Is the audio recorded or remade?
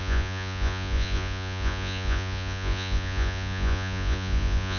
remade